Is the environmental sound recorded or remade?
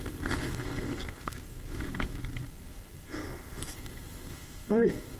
remade